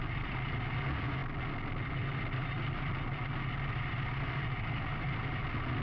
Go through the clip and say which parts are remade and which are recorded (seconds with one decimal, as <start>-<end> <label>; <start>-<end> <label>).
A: 0.0-5.8 recorded